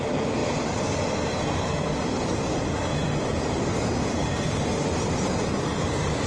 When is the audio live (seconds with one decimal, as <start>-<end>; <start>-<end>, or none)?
0.0-6.3